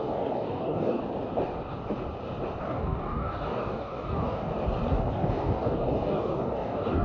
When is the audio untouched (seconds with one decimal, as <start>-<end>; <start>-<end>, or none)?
1.0-2.6; 4.5-5.1